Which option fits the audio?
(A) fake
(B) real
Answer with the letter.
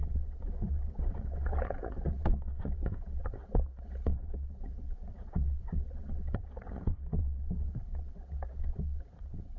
A